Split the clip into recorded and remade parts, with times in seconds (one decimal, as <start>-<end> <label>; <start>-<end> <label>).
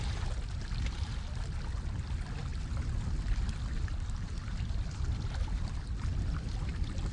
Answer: 0.0-2.5 recorded; 2.5-7.1 remade